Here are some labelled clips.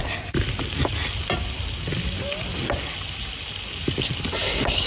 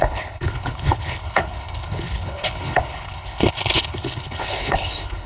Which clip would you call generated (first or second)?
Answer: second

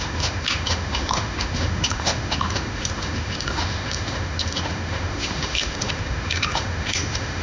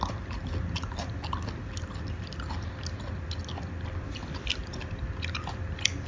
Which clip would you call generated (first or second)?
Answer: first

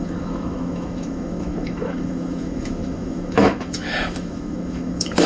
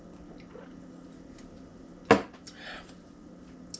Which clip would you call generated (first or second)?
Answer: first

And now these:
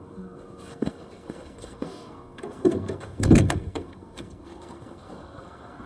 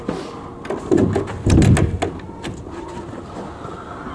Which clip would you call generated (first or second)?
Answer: first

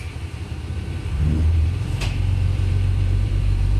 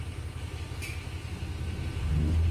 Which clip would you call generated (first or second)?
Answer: first